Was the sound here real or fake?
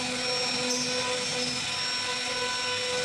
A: real